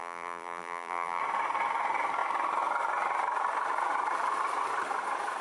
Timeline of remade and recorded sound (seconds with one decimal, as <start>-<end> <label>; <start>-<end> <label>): 0.0-1.2 remade; 1.2-5.4 recorded